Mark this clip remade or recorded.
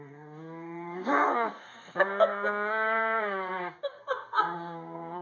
remade